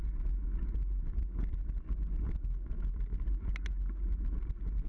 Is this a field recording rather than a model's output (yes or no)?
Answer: yes